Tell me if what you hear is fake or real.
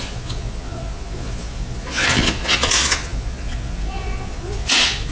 fake